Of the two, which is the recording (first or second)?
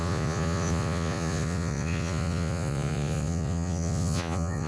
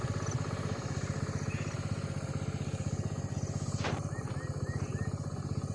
second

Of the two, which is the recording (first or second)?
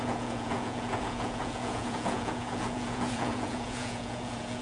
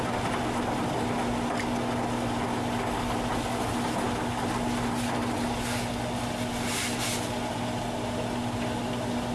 second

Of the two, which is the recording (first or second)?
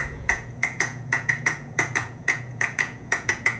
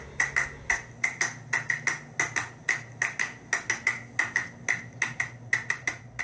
second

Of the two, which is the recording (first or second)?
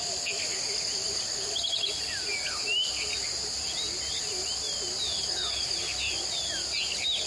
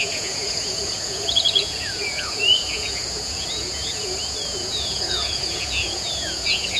first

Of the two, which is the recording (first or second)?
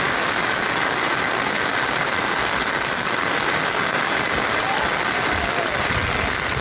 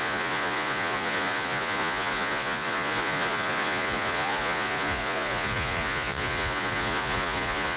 first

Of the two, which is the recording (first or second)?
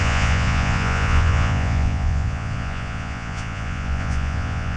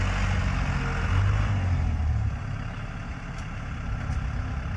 second